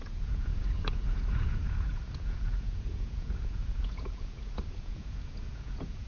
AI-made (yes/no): yes